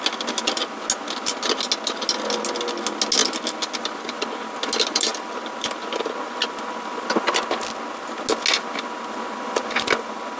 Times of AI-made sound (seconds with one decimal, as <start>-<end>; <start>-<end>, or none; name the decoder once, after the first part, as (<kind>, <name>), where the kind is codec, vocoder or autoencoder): none